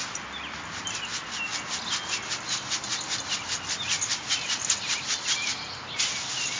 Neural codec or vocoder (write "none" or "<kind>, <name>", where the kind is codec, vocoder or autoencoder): none